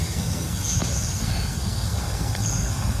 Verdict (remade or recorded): remade